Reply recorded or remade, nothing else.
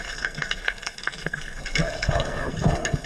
remade